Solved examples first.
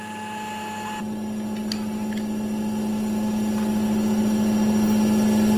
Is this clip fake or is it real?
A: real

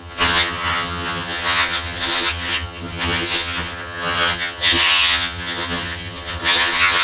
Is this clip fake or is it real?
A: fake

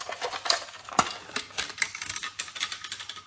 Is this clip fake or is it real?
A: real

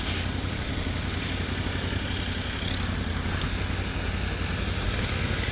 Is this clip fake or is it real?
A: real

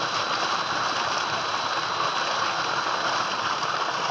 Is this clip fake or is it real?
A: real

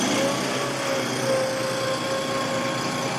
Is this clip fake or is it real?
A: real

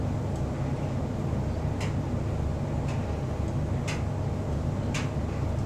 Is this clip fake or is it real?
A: real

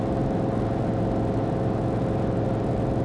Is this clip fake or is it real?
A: real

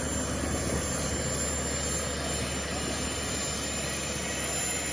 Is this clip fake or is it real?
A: real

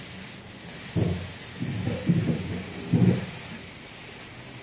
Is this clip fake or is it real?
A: real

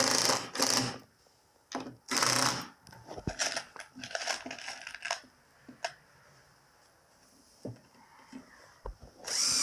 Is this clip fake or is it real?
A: real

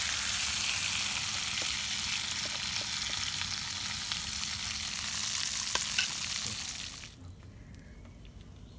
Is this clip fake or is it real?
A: real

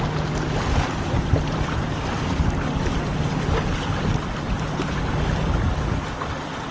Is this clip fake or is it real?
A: real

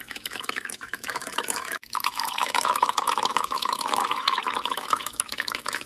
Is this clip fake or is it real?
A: fake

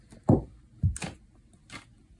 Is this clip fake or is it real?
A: real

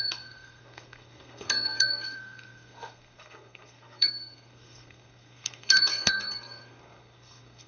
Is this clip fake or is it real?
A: fake